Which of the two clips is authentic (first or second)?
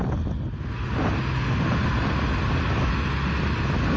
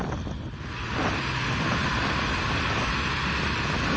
first